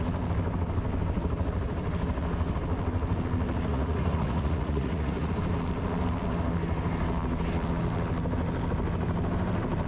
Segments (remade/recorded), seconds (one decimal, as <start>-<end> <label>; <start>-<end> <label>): 0.0-3.7 recorded; 3.7-5.3 remade; 5.3-9.9 recorded